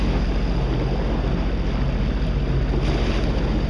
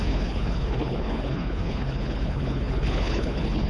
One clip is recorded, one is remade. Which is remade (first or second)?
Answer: second